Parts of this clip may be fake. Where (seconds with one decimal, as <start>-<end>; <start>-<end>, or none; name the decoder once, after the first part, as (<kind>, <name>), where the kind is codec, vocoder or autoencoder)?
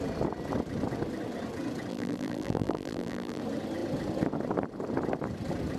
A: 1.9-3.4 (vocoder, BigVGAN v2)